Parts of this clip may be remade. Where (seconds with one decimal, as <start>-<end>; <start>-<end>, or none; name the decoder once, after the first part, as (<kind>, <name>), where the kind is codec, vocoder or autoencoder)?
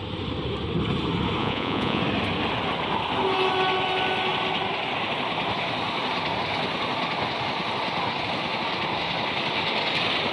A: 1.4-2.0 (vocoder, Vocos)